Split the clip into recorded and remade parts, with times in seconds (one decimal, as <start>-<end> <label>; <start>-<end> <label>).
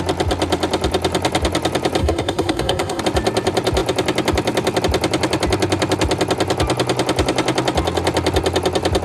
0.0-2.0 recorded; 2.0-3.0 remade; 3.0-9.0 recorded